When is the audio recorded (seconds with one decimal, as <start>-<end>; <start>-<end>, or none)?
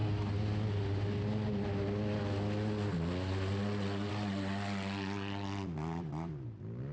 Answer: 0.0-6.9